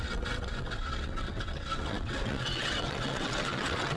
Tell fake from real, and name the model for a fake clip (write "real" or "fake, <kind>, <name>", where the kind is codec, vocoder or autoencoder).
fake, vocoder, WaveNeXt